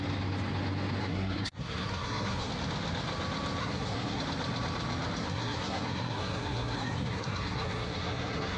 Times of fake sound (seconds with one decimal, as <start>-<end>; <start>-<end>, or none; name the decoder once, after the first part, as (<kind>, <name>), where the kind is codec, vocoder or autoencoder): 1.0-2.5 (codec, SNAC); 3.6-4.2; 5.2-8.6